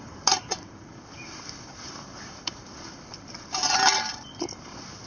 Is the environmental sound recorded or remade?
remade